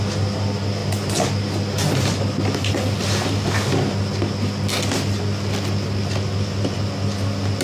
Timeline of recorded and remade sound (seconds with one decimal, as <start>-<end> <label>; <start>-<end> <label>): 0.0-7.6 recorded